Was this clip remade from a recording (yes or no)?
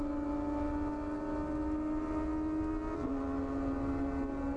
no